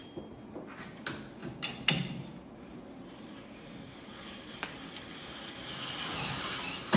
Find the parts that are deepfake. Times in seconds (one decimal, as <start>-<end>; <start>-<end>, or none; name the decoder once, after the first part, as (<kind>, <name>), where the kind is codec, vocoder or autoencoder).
none